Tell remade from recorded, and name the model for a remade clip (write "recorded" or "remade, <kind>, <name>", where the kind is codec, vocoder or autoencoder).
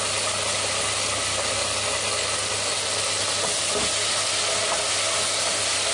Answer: recorded